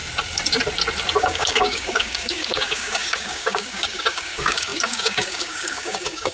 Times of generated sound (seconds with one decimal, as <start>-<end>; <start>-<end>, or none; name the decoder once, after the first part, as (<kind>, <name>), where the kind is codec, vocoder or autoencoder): 1.2-6.3 (codec, DAC)